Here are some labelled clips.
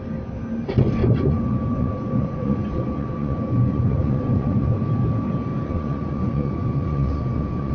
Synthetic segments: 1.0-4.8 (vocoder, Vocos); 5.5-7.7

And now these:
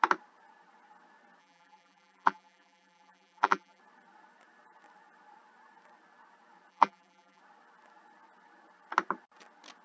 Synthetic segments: 1.4-3.8 (vocoder, BigVGAN v2); 6.7-7.4

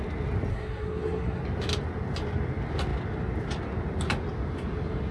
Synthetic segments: 0.5-1.4 (codec, SNAC)

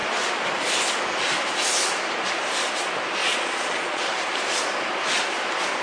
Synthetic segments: 3.2-4.0 (vocoder, Vocos)

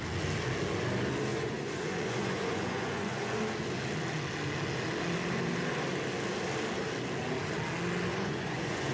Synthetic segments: 1.3-3.4 (vocoder, Vocos); 8.1-8.9

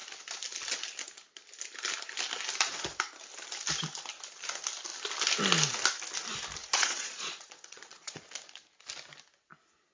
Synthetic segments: 6.6-8.2 (vocoder, Vocos)

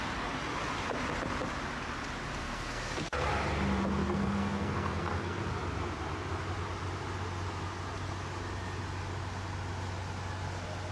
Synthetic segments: 2.4-3.3 (codec, SNAC); 4.0-5.4